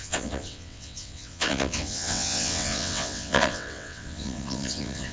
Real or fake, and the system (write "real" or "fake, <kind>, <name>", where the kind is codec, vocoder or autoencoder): fake, vocoder, WaveNeXt